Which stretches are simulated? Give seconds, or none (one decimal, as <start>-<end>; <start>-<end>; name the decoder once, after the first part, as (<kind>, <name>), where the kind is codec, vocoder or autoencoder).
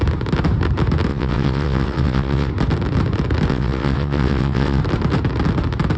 1.1-2.5 (vocoder, WaveNeXt); 3.5-4.8